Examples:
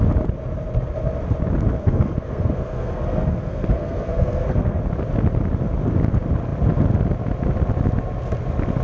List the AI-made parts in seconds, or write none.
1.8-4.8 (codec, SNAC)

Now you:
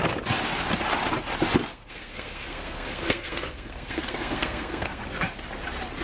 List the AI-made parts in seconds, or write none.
1.7-5.0 (codec, SNAC)

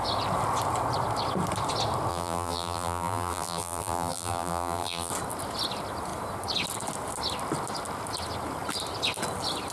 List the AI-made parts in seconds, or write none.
2.1-5.1 (vocoder, BigVGAN v2)